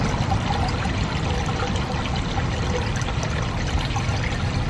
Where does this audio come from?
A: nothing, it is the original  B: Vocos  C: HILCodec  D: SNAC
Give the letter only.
A